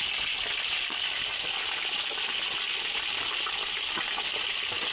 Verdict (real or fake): real